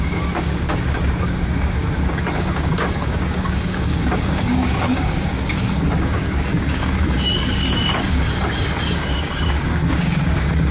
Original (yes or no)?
no